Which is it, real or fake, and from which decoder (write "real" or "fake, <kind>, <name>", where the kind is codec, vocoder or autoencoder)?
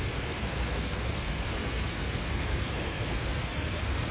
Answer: fake, codec, SNAC